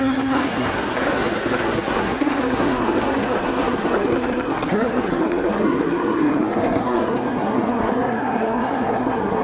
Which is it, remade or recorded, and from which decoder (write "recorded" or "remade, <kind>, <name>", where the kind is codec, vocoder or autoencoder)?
remade, codec, SNAC